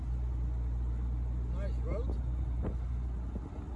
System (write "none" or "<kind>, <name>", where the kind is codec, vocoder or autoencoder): none